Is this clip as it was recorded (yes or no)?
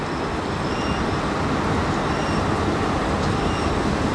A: yes